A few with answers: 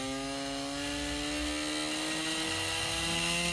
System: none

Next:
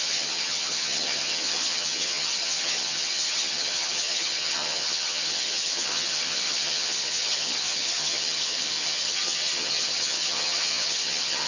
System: vocoder, HiFi-GAN